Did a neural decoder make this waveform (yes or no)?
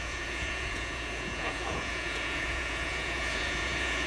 yes